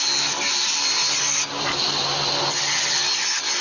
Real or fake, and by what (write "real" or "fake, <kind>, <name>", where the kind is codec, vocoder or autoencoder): real